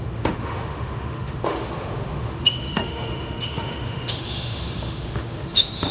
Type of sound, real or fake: fake